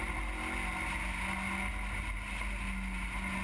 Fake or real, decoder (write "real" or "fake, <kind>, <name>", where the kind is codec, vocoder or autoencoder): real